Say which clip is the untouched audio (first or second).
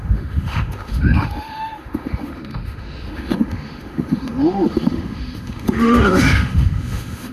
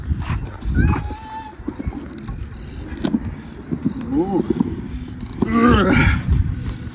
second